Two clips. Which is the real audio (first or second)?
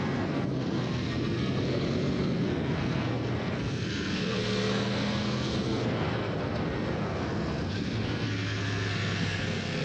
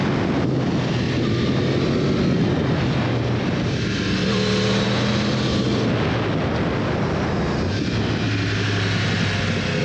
second